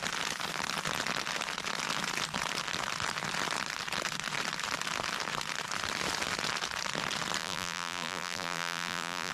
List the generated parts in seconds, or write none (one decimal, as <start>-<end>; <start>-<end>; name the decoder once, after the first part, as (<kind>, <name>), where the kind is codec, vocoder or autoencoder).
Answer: 7.4-9.3 (vocoder, BigVGAN v2)